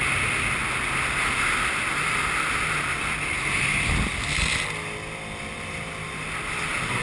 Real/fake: real